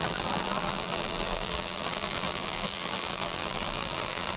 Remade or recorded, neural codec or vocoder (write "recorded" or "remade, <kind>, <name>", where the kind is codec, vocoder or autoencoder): remade, vocoder, BigVGAN v2